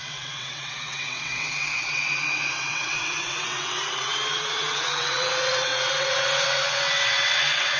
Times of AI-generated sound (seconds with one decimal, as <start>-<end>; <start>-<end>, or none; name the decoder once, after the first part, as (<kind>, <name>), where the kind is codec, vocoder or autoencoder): 0.0-7.8 (vocoder, WaveNeXt)